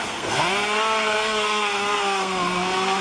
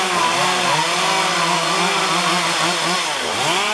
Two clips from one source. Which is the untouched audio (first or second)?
second